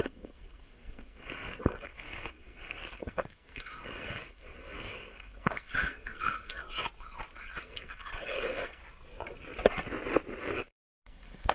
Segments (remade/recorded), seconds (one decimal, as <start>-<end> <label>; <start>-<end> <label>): 0.0-6.6 remade; 6.6-7.6 recorded; 7.6-8.8 remade; 8.8-10.4 recorded; 10.4-11.5 remade